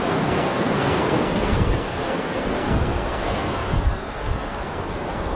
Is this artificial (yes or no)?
yes